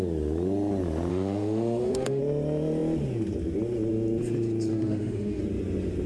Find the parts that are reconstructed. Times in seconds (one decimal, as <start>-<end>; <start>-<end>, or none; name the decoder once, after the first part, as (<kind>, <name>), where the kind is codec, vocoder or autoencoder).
1.1-2.2 (autoencoder, DAC-VAE); 4.7-5.4